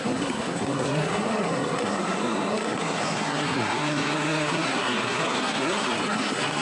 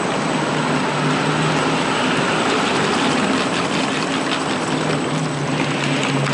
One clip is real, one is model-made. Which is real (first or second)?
second